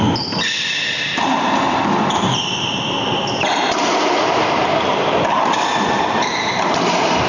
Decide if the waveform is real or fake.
real